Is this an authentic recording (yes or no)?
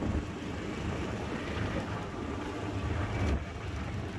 no